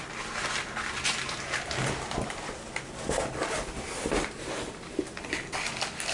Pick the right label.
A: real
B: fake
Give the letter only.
A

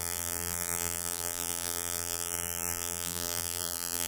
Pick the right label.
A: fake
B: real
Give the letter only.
A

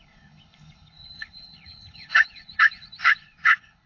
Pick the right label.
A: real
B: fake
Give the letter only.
B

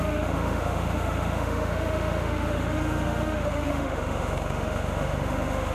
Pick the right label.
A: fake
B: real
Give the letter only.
A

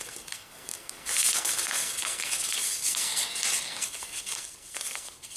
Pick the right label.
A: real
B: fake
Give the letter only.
B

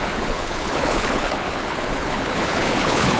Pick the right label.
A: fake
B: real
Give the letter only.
A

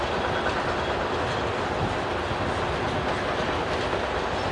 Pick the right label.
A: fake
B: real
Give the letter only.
B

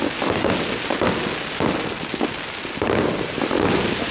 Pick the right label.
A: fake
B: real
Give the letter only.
B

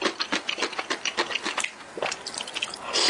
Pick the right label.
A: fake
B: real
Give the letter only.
B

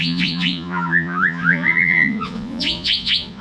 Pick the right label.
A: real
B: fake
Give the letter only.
B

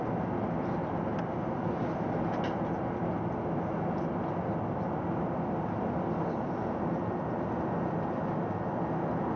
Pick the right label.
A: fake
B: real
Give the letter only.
B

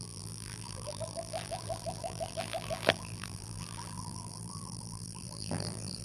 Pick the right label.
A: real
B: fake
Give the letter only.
B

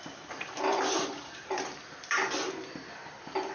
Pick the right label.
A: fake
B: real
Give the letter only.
A